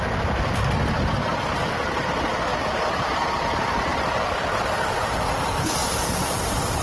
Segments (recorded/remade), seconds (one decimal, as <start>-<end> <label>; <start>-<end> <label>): 0.0-1.3 recorded; 1.3-2.1 remade; 2.1-3.9 recorded; 3.9-5.2 remade; 5.2-5.8 recorded; 5.8-6.8 remade